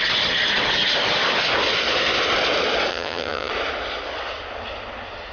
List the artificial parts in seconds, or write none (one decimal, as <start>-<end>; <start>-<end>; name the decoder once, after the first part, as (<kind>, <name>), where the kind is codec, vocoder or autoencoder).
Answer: 2.9-3.5 (vocoder, HiFi-GAN)